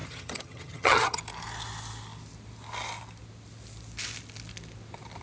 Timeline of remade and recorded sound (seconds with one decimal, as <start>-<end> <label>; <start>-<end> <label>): 0.0-1.2 remade; 1.2-5.2 recorded